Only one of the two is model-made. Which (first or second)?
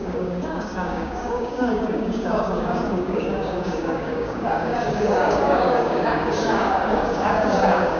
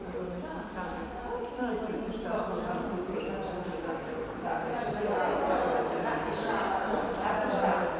first